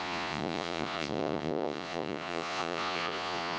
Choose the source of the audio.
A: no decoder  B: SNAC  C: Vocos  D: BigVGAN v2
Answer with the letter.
C